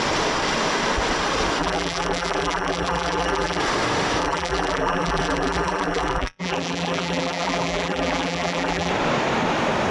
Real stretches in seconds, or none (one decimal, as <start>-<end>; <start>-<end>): 0.0-1.6; 3.6-4.2; 8.9-9.9